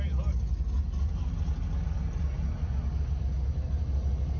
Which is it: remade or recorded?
recorded